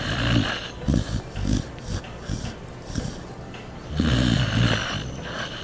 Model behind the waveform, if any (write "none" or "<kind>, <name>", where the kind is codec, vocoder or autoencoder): none